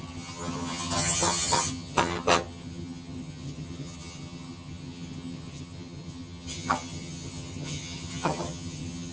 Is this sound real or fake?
fake